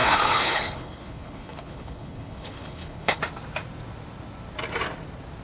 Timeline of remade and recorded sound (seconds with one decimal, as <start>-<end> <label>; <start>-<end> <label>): 0.0-3.2 remade; 3.2-5.4 recorded